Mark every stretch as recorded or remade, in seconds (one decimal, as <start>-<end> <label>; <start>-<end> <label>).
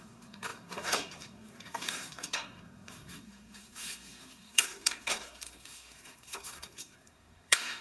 0.0-7.8 remade